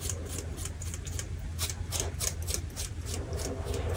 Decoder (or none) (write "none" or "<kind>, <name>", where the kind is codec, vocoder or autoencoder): none